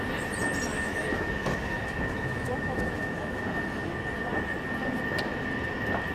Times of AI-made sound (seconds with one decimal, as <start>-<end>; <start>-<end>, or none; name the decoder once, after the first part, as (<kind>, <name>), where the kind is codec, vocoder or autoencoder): 0.7-3.4 (autoencoder, DAC-VAE)